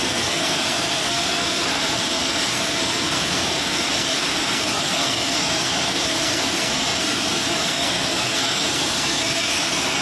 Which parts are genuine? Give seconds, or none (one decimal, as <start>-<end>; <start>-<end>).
none